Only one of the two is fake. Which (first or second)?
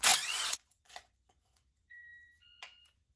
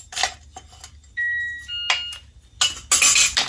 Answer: first